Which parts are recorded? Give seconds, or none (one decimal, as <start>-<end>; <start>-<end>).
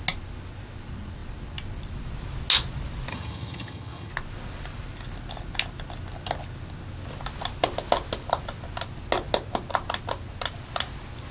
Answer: 0.0-3.1; 4.1-11.3